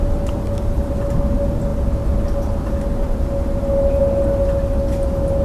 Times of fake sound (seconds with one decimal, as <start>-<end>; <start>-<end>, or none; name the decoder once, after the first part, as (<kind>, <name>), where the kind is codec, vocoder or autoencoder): none